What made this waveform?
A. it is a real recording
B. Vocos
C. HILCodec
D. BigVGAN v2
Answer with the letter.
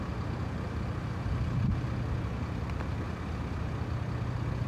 A